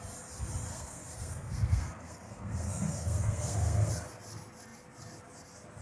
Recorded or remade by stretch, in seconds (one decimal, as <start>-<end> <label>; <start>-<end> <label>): 0.0-0.7 recorded; 0.7-3.9 remade; 3.9-5.8 recorded